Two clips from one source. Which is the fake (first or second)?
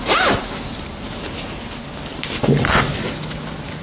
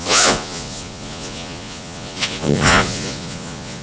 second